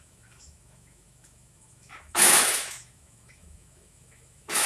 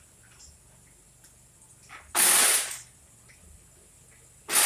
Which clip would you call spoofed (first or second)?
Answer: first